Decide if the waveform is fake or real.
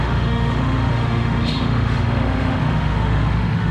fake